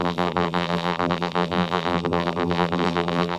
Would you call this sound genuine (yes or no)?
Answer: no